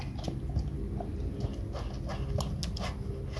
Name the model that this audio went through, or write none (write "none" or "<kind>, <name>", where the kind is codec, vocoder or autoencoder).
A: none